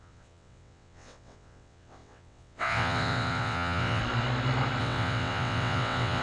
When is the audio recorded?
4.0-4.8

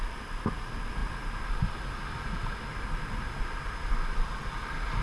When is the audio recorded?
0.0-5.0

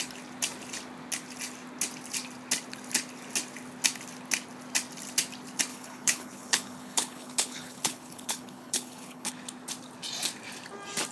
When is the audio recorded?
0.0-5.7; 9.3-11.1

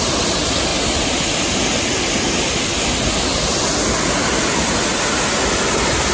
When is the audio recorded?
0.0-6.1

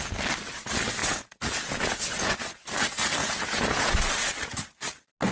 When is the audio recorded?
0.0-1.0; 2.3-3.2; 3.9-5.3